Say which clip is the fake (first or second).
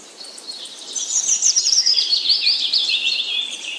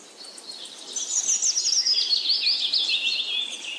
first